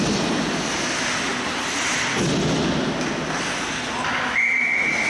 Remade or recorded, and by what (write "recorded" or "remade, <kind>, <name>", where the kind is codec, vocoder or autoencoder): recorded